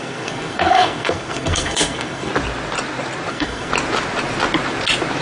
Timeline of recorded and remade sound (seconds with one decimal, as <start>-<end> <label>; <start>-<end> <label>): 0.0-2.3 remade; 2.3-3.3 recorded; 3.3-3.7 remade; 3.7-5.2 recorded